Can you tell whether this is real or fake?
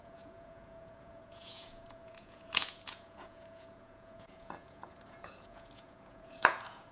fake